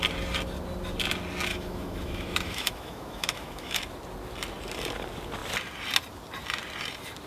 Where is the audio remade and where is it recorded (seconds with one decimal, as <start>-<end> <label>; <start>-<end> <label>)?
0.0-1.5 recorded; 1.5-3.8 remade; 3.8-7.3 recorded